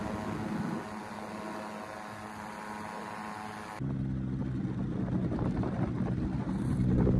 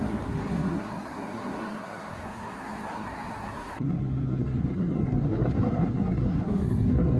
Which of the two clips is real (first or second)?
first